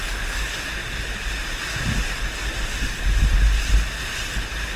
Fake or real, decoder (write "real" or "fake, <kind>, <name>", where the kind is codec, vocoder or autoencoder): real